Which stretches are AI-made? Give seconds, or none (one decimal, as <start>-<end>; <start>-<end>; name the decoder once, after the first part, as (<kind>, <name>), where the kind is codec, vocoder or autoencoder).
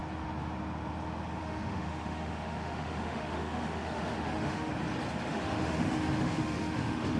1.4-4.7 (autoencoder, DAC-VAE); 5.3-7.2